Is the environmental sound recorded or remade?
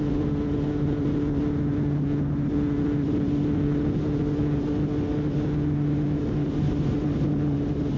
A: recorded